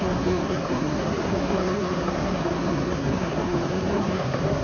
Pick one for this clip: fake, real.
fake